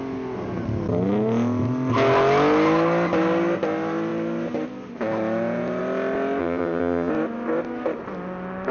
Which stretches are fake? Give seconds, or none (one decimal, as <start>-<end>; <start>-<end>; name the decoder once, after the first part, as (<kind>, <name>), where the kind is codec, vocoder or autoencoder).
6.4-7.1 (vocoder, HiFi-GAN)